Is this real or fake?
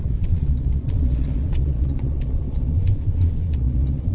fake